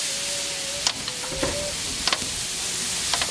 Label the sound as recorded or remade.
recorded